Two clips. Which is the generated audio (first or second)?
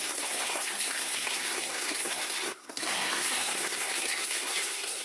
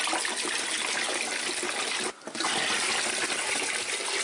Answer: first